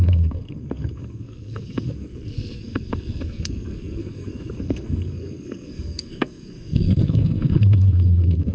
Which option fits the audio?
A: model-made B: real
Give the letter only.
A